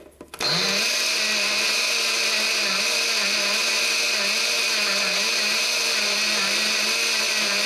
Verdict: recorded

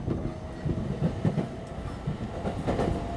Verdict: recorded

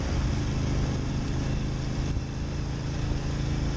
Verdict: recorded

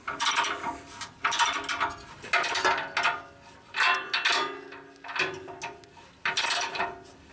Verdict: recorded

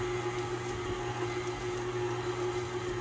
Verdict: recorded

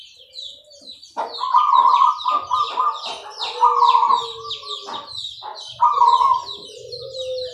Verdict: recorded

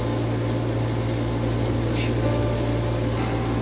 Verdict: recorded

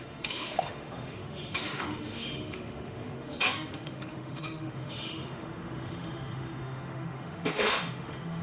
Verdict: remade